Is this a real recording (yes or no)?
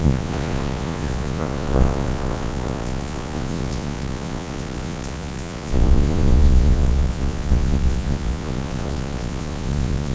no